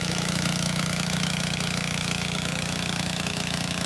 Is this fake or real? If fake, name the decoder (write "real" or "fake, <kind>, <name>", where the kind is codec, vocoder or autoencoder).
fake, autoencoder, DAC-VAE